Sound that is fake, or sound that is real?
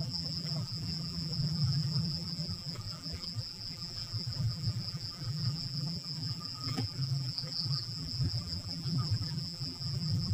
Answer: fake